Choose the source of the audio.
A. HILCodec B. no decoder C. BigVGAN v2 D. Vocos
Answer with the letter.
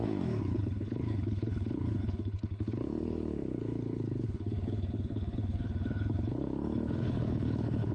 A